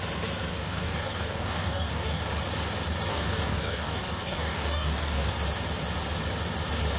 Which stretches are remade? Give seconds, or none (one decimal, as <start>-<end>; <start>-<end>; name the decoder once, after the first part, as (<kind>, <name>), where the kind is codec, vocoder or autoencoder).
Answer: 0.5-2.2 (codec, DAC); 3.1-5.3

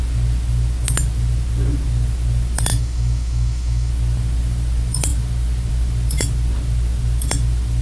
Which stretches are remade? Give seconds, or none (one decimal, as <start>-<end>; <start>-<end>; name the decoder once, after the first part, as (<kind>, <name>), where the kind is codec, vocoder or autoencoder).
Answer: 2.7-3.9 (autoencoder, DAC-VAE)

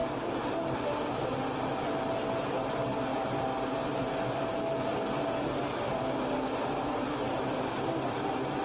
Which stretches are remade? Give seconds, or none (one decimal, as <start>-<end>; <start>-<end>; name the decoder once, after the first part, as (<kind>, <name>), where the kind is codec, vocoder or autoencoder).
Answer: none

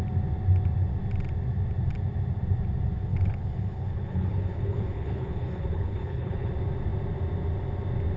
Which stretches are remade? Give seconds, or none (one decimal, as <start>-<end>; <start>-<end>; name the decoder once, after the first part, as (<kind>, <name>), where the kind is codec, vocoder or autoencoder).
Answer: 3.1-6.5 (codec, HILCodec)